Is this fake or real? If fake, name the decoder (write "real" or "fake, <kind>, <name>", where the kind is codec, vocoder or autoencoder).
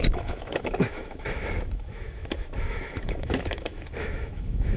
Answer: fake, autoencoder, DAC-VAE